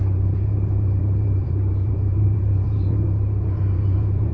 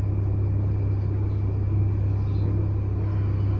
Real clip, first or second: second